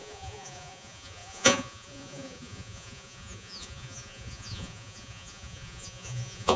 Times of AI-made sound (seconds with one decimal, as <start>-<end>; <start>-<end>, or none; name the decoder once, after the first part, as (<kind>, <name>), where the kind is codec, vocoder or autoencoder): 0.0-6.6 (vocoder, Vocos)